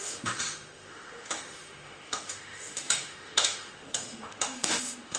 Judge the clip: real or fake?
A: fake